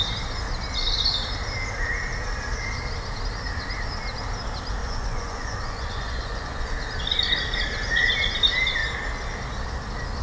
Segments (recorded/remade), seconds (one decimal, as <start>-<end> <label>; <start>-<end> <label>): 0.0-4.8 recorded; 4.8-6.7 remade; 6.7-10.2 recorded

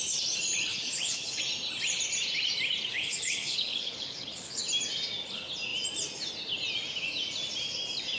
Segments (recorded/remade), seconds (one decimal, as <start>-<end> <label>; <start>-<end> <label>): 0.0-0.7 recorded; 0.7-1.4 remade; 1.4-2.9 recorded; 2.9-4.6 remade; 4.6-8.2 recorded